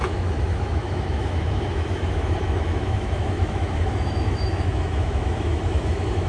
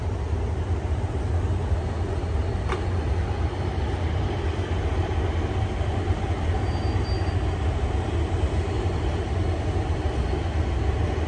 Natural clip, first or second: second